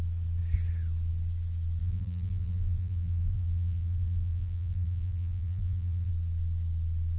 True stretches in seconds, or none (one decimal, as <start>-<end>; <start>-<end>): 0.0-1.8; 6.1-7.2